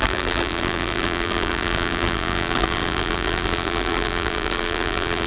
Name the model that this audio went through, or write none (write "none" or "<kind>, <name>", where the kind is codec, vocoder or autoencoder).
vocoder, BigVGAN v2